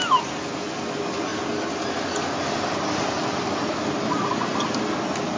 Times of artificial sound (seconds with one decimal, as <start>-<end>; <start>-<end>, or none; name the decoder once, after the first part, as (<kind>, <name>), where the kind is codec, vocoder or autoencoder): none

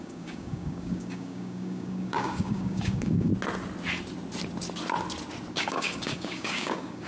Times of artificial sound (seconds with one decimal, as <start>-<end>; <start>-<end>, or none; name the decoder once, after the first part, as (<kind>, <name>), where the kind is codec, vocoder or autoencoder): 0.0-3.3 (codec, DAC); 5.5-7.1

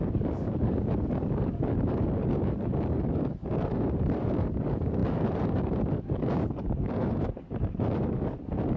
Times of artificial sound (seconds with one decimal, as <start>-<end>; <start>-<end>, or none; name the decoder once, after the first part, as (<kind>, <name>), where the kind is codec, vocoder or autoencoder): 0.0-8.8 (codec, DAC)

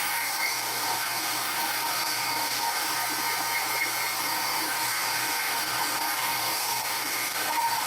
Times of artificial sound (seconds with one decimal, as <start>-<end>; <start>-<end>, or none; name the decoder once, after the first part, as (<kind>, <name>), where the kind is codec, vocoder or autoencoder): 0.0-3.0 (codec, DAC); 4.2-7.9

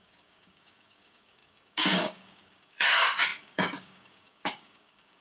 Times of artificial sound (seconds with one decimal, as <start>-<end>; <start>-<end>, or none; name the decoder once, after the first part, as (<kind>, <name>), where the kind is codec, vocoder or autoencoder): 0.0-5.2 (codec, DAC)

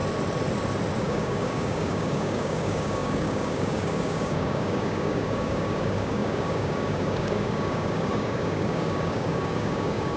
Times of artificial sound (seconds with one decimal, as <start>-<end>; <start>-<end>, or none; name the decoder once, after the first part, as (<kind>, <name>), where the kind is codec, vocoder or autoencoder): 1.0-10.2 (codec, DAC)

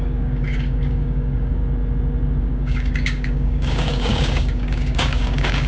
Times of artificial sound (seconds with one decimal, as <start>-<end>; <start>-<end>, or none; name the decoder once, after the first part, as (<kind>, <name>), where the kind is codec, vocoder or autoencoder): 0.0-1.6 (codec, DAC); 2.4-5.7